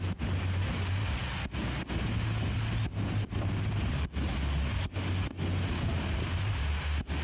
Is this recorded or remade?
recorded